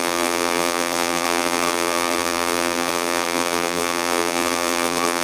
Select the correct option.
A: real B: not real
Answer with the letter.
B